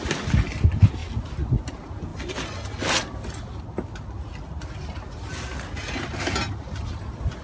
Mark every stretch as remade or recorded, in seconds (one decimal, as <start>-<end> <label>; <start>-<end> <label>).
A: 0.0-7.4 recorded